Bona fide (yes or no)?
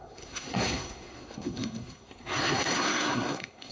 no